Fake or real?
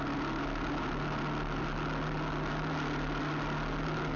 real